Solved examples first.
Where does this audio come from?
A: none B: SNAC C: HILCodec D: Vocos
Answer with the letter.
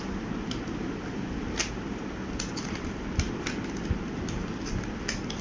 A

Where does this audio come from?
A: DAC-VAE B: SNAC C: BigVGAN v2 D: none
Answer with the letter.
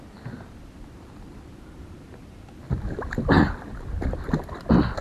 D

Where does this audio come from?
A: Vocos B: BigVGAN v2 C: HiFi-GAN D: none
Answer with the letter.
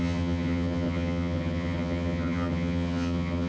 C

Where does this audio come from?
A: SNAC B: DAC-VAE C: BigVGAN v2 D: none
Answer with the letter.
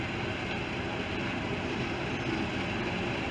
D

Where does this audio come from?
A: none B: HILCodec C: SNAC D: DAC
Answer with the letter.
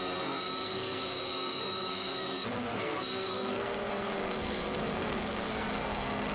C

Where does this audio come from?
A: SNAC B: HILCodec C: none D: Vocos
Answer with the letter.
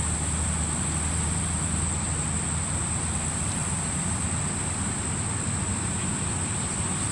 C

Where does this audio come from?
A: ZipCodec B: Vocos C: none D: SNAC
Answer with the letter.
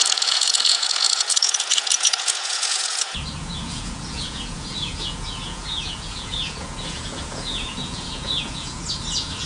B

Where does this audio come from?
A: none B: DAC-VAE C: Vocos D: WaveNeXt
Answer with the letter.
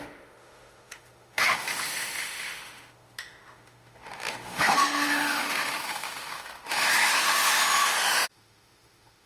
B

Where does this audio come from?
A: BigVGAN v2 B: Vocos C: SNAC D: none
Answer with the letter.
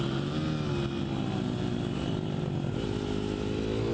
D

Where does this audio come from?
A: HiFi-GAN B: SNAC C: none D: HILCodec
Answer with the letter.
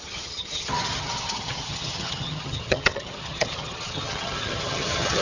A